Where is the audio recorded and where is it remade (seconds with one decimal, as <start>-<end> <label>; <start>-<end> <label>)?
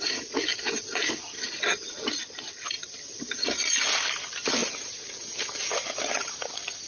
0.0-6.9 recorded